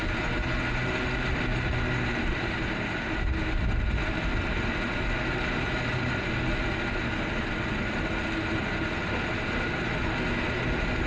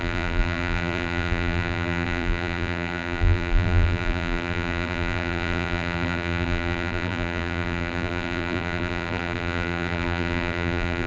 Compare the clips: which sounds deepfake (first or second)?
second